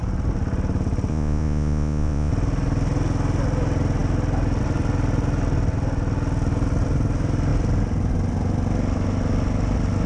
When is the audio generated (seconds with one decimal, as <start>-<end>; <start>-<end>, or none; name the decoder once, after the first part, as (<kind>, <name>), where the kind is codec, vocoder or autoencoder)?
1.1-2.3 (vocoder, Vocos)